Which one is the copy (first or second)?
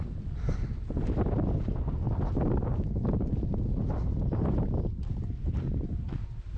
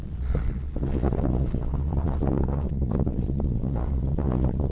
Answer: second